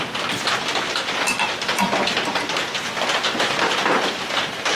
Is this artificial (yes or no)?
yes